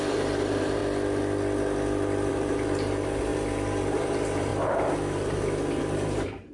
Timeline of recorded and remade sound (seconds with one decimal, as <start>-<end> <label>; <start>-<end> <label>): 0.0-0.8 remade; 0.8-2.3 recorded; 2.3-6.5 remade